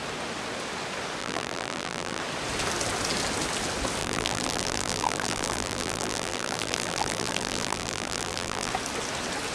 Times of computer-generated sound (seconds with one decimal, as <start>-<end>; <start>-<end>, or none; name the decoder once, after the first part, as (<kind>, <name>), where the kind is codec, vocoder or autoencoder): 1.2-2.2 (vocoder, BigVGAN v2); 4.0-8.7